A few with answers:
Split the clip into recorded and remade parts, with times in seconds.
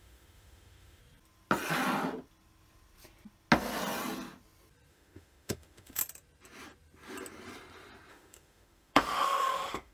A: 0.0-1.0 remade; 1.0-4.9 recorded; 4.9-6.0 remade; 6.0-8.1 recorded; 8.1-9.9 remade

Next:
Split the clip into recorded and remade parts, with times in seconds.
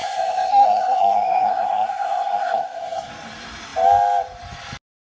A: 0.0-3.1 remade; 3.1-5.1 recorded